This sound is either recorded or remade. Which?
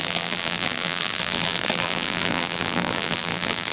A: remade